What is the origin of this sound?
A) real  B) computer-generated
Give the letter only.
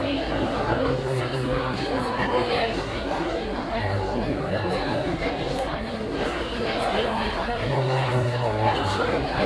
B